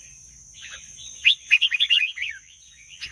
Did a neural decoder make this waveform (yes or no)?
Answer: yes